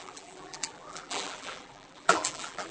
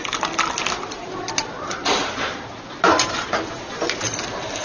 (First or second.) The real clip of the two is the second